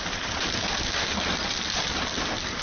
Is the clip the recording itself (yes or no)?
yes